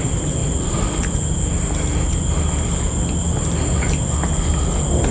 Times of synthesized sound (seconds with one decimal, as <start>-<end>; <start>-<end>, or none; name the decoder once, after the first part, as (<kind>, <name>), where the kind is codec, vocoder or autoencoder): none